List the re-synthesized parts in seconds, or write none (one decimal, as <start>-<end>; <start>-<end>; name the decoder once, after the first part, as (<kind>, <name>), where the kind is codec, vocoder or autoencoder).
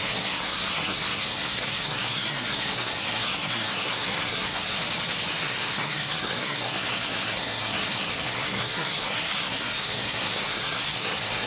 0.0-4.8 (codec, SNAC); 5.3-11.5